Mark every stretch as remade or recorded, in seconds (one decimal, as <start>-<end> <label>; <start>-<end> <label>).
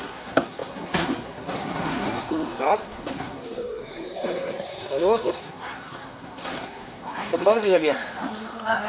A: 0.0-8.9 remade